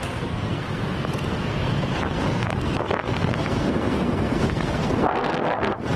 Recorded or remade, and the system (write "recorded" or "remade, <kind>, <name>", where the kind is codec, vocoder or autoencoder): remade, codec, SNAC